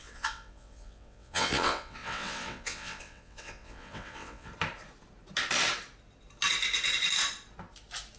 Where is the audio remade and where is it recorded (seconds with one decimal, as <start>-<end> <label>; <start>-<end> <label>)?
0.0-4.5 remade; 4.5-8.2 recorded